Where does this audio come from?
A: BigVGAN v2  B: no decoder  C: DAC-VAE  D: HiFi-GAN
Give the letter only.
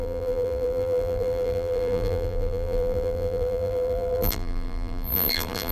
A